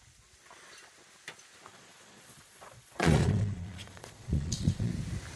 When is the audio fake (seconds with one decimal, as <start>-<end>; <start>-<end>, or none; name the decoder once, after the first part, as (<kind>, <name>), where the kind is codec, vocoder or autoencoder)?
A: 1.7-4.9 (vocoder, Vocos)